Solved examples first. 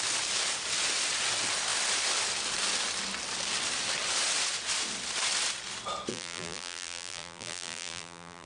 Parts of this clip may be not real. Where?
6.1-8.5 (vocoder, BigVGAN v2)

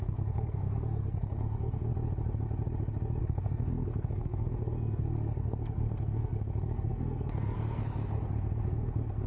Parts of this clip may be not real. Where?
0.0-1.9 (codec, SNAC); 3.2-9.3

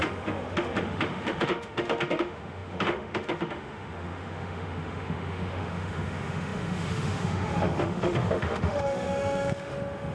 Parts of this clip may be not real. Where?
0.0-10.1 (autoencoder, DAC-VAE)

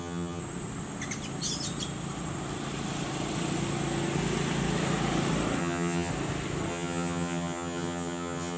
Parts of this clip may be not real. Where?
0.0-0.4 (vocoder, HiFi-GAN); 5.6-6.1; 6.7-8.6

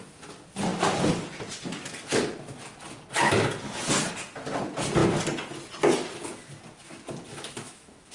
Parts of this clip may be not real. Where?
7.3-8.1 (autoencoder, DAC-VAE)

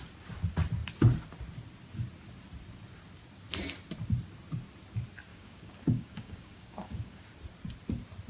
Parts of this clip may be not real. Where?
5.3-7.2 (codec, DAC)